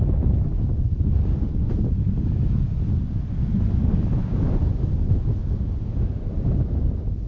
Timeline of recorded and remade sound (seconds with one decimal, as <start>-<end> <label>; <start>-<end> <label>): 0.0-7.3 recorded